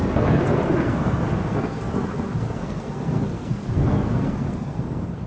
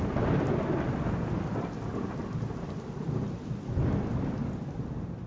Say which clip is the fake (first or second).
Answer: first